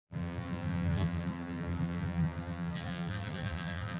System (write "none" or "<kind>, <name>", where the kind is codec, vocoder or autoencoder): vocoder, BigVGAN v2